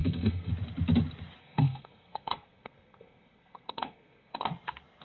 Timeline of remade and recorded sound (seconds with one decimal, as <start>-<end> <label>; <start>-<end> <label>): 0.0-0.5 remade; 0.5-1.4 recorded; 1.4-4.4 remade; 4.4-5.0 recorded